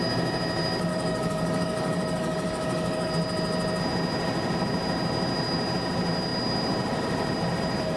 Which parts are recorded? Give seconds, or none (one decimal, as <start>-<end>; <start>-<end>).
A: 0.0-0.9; 3.1-8.0